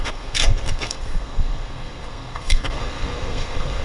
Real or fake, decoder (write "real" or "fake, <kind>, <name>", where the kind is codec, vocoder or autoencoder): fake, codec, SNAC